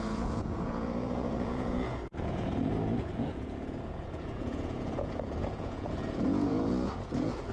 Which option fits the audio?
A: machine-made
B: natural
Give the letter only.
A